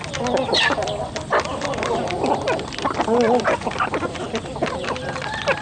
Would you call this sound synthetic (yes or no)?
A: no